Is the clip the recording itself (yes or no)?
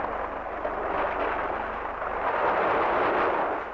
yes